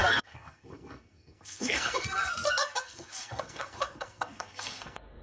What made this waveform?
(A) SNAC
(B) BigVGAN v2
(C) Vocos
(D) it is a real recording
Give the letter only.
A